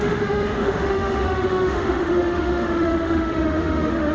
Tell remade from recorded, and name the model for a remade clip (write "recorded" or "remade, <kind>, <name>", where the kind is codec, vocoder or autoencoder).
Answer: remade, autoencoder, DAC-VAE